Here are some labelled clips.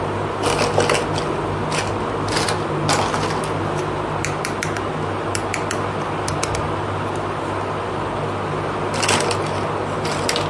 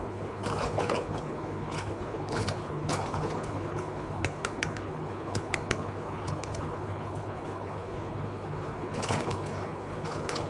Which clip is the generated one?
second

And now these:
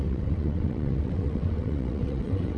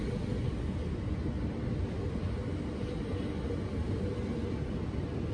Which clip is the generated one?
first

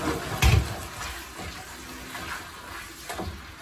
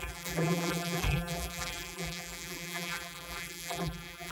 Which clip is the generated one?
second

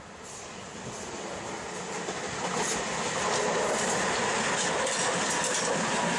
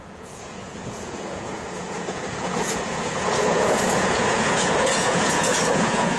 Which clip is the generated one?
second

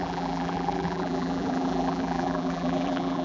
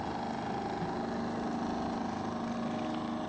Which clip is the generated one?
first